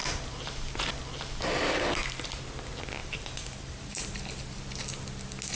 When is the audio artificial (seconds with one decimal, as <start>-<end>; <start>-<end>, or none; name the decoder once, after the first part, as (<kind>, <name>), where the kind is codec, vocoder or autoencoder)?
0.0-0.8 (vocoder, BigVGAN v2); 3.0-4.2

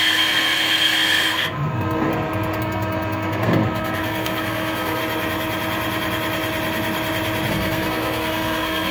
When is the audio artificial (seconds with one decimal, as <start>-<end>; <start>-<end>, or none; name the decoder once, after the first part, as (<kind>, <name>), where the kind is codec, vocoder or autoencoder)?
0.0-2.1 (codec, SNAC); 2.6-5.0; 7.5-8.9

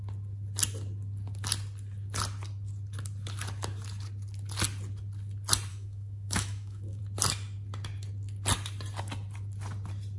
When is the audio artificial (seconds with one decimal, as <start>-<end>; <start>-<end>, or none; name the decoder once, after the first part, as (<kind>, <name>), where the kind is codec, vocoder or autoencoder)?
5.7-7.0 (autoencoder, DAC-VAE)

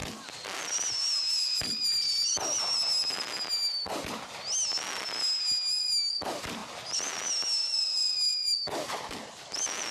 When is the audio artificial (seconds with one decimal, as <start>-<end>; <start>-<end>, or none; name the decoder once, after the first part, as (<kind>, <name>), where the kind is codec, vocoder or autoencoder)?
0.0-3.0 (vocoder, BigVGAN v2); 6.1-6.6; 7.6-9.9

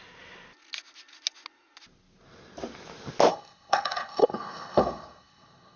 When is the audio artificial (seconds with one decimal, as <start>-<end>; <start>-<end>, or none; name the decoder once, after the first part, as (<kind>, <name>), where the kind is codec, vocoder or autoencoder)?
3.3-5.8 (codec, HILCodec)